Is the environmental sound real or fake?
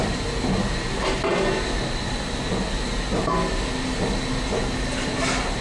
real